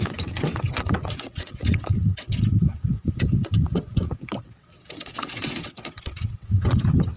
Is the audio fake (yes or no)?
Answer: yes